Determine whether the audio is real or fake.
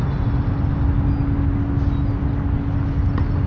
real